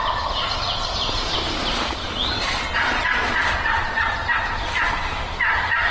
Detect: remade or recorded recorded